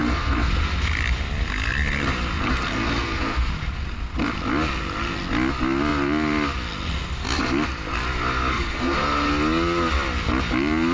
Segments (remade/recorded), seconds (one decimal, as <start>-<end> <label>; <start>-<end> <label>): 0.0-0.5 remade; 0.5-2.5 recorded; 2.5-3.5 remade; 3.5-8.5 recorded; 8.5-9.3 remade; 9.3-10.9 recorded